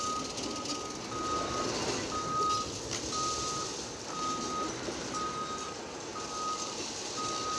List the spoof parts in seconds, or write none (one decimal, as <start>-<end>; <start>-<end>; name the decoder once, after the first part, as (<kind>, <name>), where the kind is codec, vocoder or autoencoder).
none